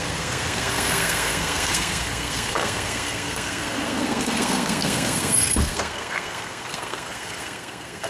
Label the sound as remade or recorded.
remade